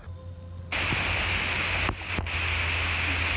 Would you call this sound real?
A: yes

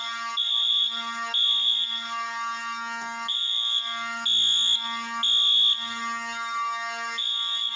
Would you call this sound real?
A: yes